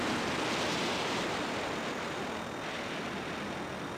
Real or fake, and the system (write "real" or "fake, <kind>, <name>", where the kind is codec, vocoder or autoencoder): real